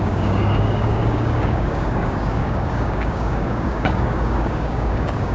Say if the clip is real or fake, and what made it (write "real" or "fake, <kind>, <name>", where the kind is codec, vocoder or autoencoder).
fake, codec, DAC